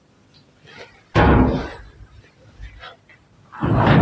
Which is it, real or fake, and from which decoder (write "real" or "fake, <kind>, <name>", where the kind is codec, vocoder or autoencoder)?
real